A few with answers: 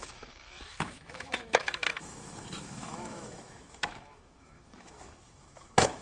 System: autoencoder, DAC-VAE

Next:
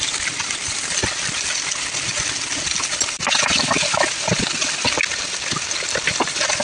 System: none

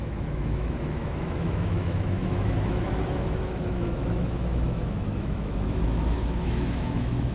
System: autoencoder, DAC-VAE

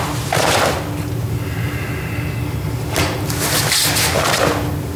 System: none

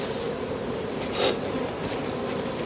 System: none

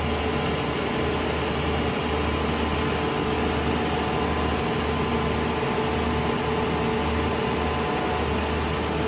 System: none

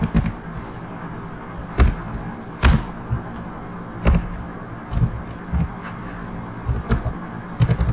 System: none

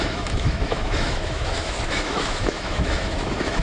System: autoencoder, DAC-VAE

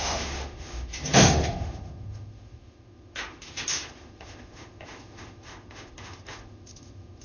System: autoencoder, DAC-VAE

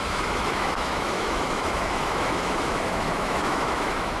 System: autoencoder, DAC-VAE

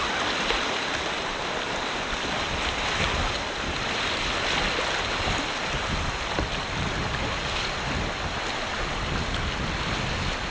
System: none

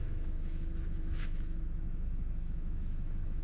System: autoencoder, DAC-VAE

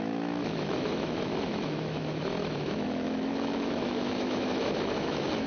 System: autoencoder, DAC-VAE